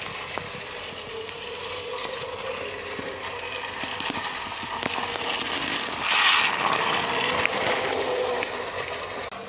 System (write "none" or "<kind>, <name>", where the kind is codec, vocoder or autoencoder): none